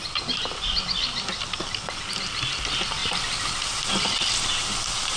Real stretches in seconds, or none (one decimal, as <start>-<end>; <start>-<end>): 0.0-5.2